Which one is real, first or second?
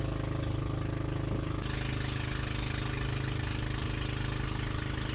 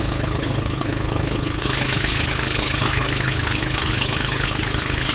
first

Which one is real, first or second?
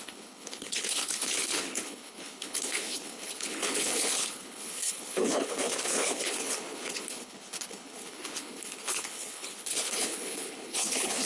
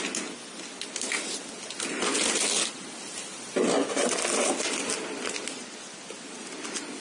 second